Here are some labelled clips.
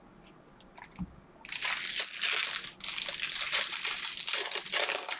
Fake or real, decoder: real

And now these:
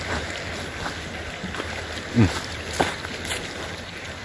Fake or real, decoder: real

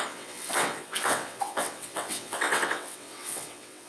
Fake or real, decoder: fake, vocoder, WaveNeXt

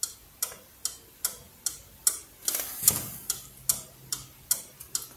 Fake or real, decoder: real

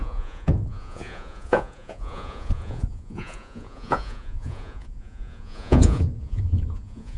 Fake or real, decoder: fake, vocoder, Vocos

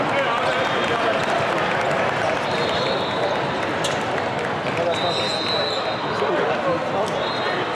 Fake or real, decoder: real